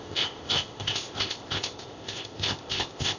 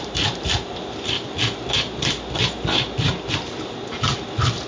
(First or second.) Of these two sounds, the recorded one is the second